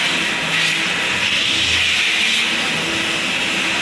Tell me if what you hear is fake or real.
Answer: real